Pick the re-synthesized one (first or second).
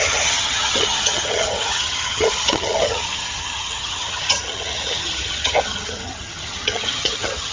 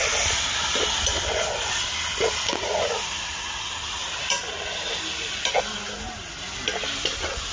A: first